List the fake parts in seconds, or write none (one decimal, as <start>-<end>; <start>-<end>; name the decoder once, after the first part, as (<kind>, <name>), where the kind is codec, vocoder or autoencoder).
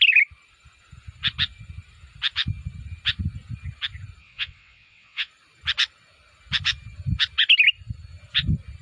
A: 4.2-5.3 (vocoder, WaveNeXt)